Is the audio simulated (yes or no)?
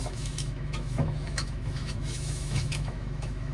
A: yes